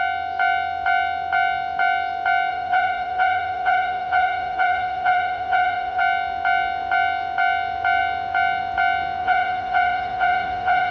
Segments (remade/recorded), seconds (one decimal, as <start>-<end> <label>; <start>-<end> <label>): 0.0-2.5 recorded; 2.5-6.0 remade; 6.0-9.2 recorded; 9.2-10.9 remade